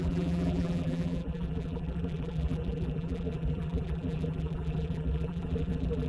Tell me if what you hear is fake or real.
fake